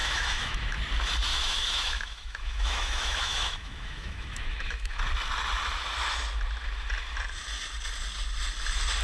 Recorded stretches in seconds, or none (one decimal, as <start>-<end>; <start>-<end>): 0.8-1.3; 5.0-9.0